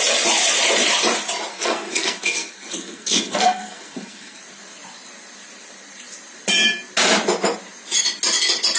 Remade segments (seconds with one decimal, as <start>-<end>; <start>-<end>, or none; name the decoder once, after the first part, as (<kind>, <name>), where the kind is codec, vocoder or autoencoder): 1.5-4.4 (codec, SNAC)